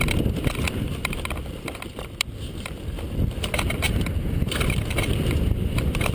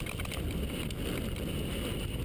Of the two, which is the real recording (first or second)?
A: second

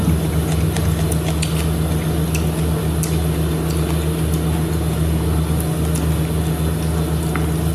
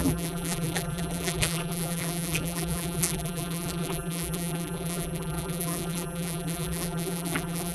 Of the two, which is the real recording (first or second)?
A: first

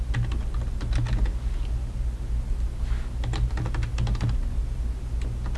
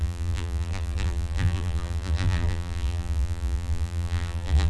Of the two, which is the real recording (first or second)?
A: first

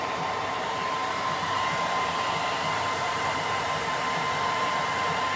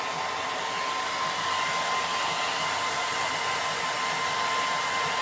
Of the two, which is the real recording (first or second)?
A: second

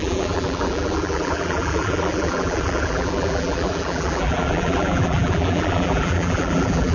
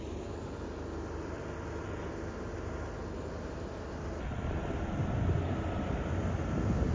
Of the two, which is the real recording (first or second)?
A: second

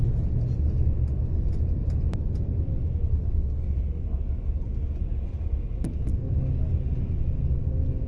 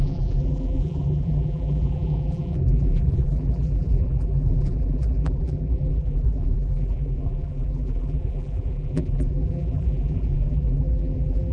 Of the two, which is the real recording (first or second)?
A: first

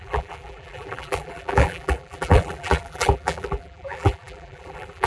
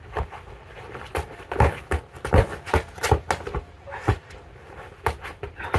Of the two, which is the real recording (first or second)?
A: second